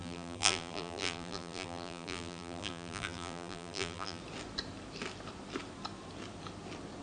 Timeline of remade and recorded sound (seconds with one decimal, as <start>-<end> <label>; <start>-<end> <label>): 0.0-4.2 remade; 4.2-7.0 recorded